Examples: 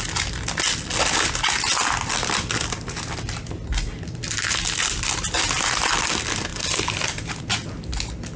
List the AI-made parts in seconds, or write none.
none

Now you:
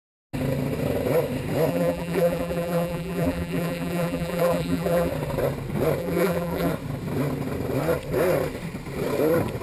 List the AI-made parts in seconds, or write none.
1.7-5.1 (vocoder, BigVGAN v2); 6.0-6.7

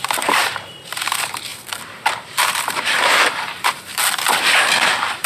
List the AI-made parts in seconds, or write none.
0.0-1.5 (vocoder, BigVGAN v2); 2.2-5.3

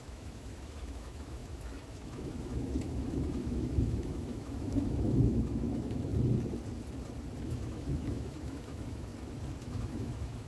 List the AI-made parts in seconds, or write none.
0.0-6.1 (autoencoder, DAC-VAE); 7.4-9.1; 9.6-10.5

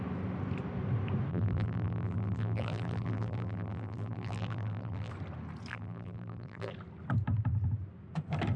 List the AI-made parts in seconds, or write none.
1.3-5.1 (vocoder, BigVGAN v2); 5.7-6.7

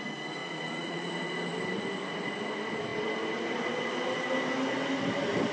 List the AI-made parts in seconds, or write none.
0.4-1.1 (vocoder, Vocos)

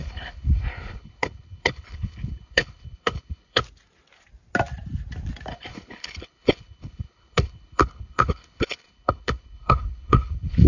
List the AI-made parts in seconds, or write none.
0.0-3.6 (codec, HILCodec); 5.5-10.7